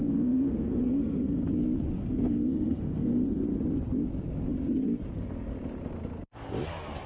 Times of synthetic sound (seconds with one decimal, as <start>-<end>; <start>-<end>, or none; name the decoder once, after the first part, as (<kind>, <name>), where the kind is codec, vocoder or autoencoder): 0.0-1.4 (codec, SNAC); 1.9-3.4